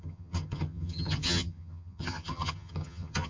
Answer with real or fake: fake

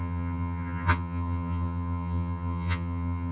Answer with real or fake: fake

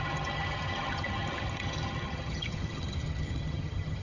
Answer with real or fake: fake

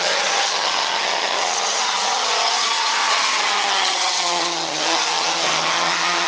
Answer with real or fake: fake